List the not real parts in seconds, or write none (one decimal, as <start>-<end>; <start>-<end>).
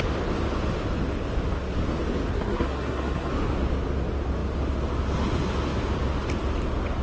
2.3-3.3